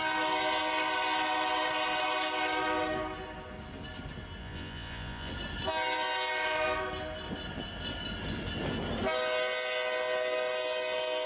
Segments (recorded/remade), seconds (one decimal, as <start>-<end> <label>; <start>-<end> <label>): 0.0-4.4 recorded; 4.4-5.3 remade; 5.3-11.3 recorded